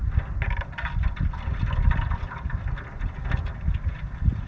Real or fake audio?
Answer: real